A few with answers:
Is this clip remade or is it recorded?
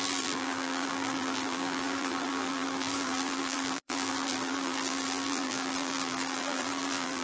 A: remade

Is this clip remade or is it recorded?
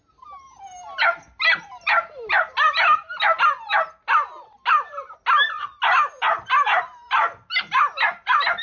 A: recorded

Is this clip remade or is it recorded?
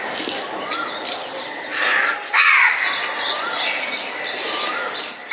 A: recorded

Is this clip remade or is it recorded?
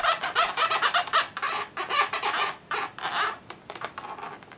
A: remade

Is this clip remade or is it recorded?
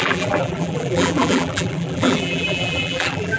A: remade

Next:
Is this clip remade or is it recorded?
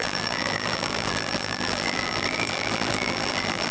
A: remade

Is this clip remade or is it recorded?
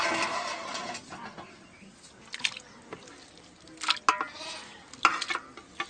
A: recorded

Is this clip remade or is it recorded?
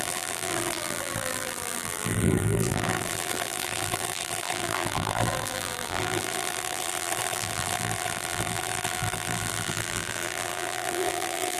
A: remade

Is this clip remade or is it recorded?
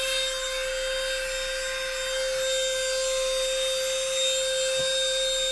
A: recorded